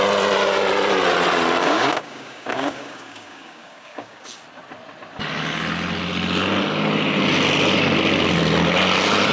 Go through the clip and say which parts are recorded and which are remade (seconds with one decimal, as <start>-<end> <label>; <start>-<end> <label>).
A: 0.0-1.6 recorded; 1.6-4.4 remade; 4.4-9.3 recorded

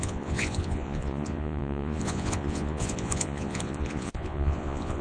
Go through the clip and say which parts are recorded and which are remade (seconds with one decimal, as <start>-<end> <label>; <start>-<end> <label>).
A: 0.0-5.0 remade

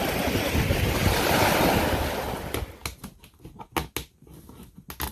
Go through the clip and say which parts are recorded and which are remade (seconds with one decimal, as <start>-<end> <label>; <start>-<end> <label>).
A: 0.0-5.1 recorded

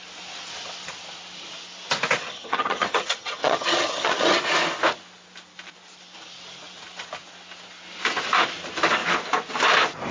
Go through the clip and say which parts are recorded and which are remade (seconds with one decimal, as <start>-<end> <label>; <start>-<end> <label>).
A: 0.0-2.2 recorded; 2.2-4.4 remade; 4.4-10.1 recorded

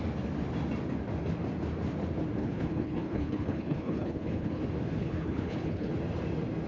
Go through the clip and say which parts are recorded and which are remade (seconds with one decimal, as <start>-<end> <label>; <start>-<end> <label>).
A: 0.0-2.4 recorded; 2.4-4.6 remade; 4.6-5.0 recorded; 5.0-5.9 remade; 5.9-6.7 recorded

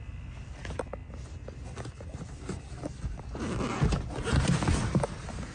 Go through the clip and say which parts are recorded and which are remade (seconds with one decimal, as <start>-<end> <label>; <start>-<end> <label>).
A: 0.0-5.5 recorded

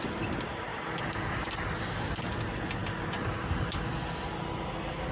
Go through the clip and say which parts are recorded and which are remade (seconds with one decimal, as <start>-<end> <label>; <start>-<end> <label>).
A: 0.0-5.1 recorded

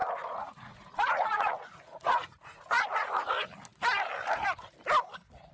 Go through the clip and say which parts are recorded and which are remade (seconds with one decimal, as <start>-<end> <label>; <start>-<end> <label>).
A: 0.0-3.3 remade; 3.3-5.5 recorded